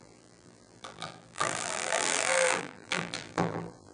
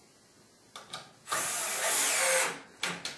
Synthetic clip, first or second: first